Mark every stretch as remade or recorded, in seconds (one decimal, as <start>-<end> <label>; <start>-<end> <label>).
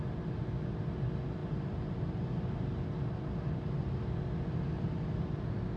0.0-5.8 recorded